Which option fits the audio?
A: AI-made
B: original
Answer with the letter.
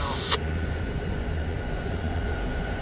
A